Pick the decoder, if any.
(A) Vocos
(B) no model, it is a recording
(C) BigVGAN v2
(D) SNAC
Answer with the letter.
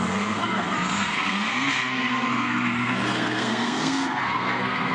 D